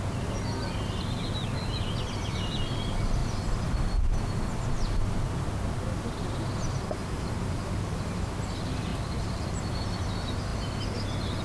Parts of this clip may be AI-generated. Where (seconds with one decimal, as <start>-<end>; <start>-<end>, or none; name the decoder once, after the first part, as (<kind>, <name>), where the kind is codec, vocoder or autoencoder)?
7.0-8.2 (vocoder, BigVGAN v2); 8.9-9.6

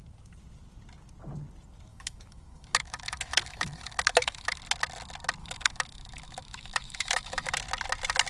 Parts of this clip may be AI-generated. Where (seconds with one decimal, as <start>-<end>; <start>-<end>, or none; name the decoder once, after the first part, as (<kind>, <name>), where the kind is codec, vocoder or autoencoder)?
1.9-4.6 (autoencoder, DAC-VAE); 5.4-7.5

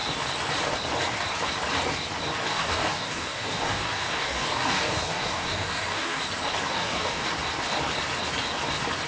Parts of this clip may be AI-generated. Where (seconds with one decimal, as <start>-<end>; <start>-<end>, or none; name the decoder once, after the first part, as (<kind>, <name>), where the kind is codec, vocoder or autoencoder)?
2.5-6.2 (codec, DAC); 6.7-7.3

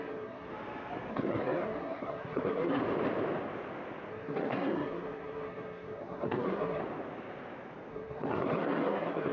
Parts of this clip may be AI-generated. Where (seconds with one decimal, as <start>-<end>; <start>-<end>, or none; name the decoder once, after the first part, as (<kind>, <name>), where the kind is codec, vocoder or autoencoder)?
0.0-0.5 (codec, SNAC); 1.1-2.8; 4.1-6.8; 7.9-9.3

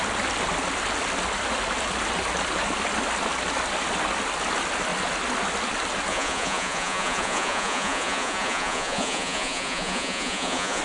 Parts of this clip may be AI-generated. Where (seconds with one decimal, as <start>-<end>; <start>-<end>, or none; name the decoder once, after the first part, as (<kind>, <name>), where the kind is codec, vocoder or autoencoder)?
6.1-10.8 (vocoder, Vocos)

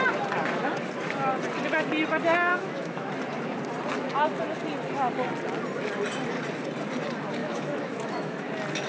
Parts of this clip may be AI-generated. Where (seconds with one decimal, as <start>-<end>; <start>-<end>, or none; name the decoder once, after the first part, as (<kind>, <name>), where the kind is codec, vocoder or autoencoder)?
2.5-3.1 (autoencoder, DAC-VAE); 7.4-8.5